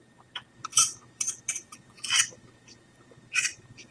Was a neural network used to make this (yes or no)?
yes